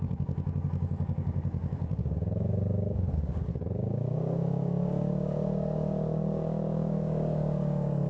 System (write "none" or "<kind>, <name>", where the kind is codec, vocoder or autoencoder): codec, DAC